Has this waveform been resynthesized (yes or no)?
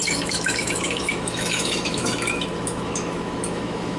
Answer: yes